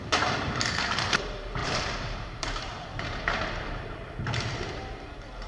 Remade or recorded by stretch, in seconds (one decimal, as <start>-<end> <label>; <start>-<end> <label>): 0.0-1.6 recorded; 1.6-4.1 remade; 4.1-5.5 recorded